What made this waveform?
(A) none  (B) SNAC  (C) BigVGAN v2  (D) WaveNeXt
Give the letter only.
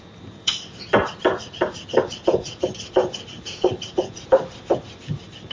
C